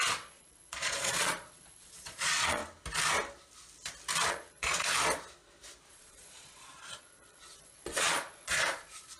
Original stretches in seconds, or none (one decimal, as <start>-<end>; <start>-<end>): 2.6-4.3; 4.9-5.9